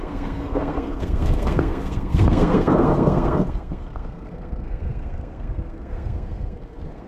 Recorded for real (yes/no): no